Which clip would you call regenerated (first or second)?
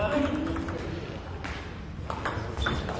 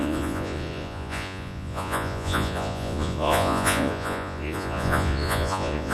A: second